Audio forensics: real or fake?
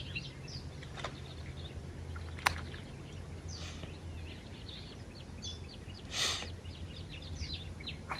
real